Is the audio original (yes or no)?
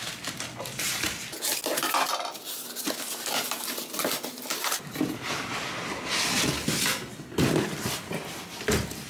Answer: yes